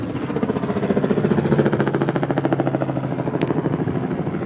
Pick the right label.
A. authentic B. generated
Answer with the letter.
A